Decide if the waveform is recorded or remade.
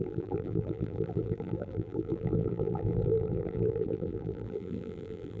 remade